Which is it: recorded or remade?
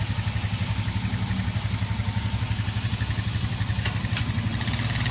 recorded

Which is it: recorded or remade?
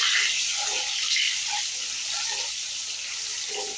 recorded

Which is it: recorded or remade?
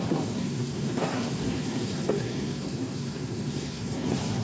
remade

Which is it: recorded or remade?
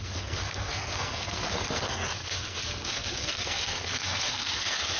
remade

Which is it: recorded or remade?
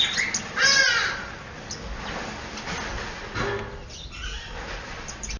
recorded